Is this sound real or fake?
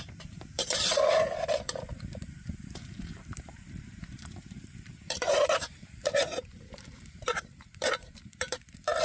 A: fake